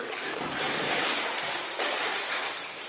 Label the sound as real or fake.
real